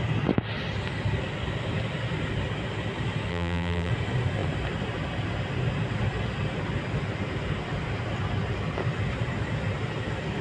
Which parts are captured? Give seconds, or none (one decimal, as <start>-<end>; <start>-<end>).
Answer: 0.0-3.3; 3.9-10.4